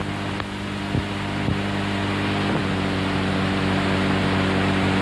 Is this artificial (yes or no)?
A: no